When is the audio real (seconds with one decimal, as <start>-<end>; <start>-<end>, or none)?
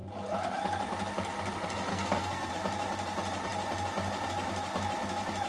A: 0.0-1.9; 2.5-5.5